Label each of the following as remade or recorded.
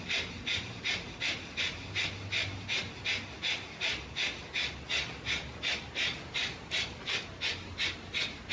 recorded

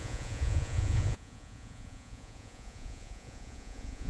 remade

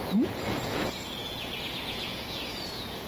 remade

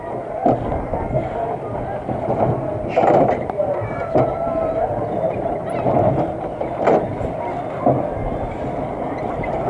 recorded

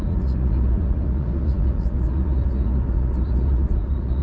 remade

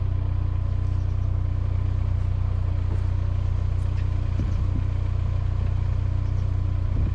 recorded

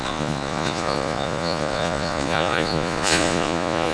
remade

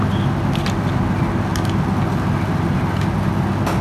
recorded